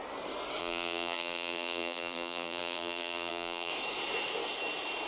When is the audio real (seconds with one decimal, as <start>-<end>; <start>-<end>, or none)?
0.0-0.6; 3.7-5.1